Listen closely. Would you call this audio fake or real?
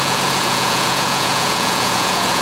fake